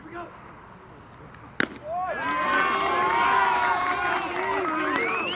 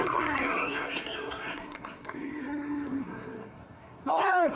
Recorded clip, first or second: first